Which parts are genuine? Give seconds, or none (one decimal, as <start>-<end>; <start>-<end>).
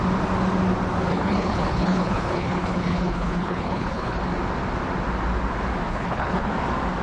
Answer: 0.0-1.1; 4.2-5.9; 6.5-7.0